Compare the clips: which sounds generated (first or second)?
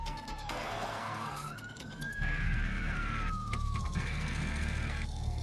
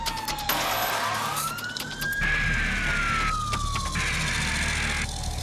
first